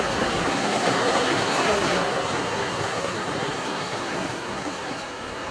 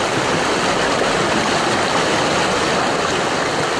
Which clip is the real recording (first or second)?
second